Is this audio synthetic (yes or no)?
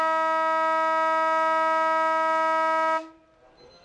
no